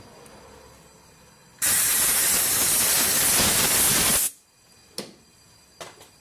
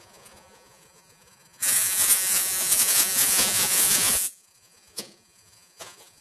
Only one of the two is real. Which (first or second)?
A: first